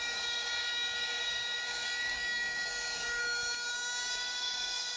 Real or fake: fake